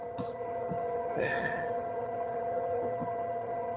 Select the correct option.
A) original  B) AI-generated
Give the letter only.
B